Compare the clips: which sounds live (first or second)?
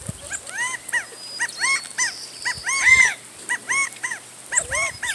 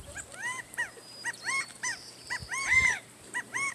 first